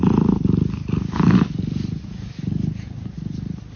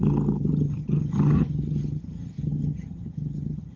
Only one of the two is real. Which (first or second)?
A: first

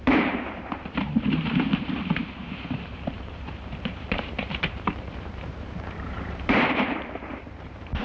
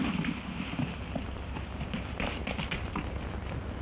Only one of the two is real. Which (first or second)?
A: second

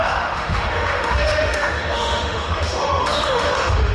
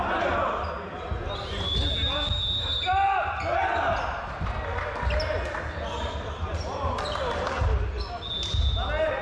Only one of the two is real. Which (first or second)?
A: second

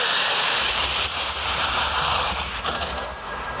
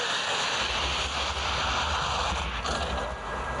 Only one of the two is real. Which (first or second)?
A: second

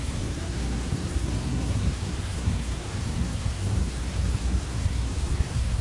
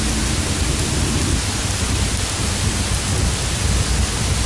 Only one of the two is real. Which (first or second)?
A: second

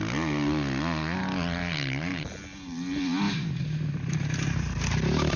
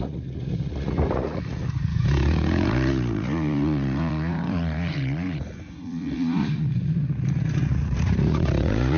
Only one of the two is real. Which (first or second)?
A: first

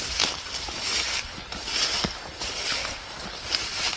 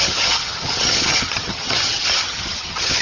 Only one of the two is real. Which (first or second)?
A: first